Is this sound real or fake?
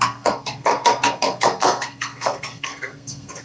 fake